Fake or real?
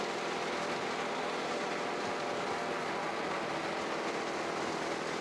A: real